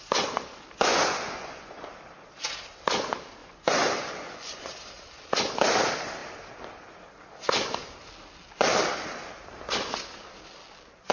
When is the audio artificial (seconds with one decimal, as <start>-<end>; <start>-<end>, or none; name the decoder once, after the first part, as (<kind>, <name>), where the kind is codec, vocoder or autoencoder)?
0.9-1.9 (vocoder, Vocos); 3.4-4.7